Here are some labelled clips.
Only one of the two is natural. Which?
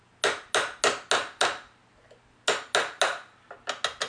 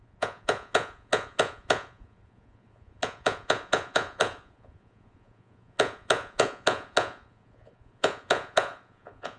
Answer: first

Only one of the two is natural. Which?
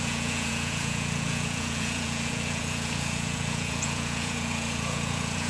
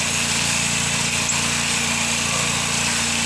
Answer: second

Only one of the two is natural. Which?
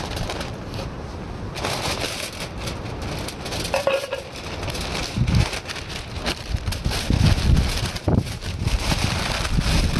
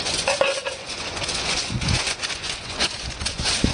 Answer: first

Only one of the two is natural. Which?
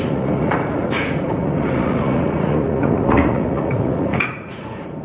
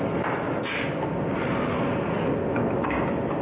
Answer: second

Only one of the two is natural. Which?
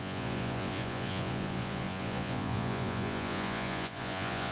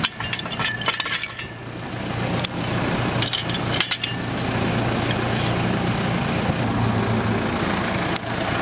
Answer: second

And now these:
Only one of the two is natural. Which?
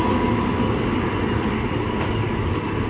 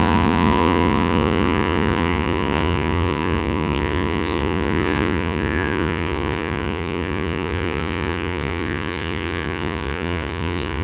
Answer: first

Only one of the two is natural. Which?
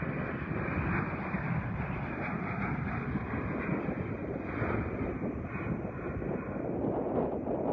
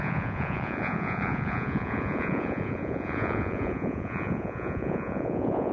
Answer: first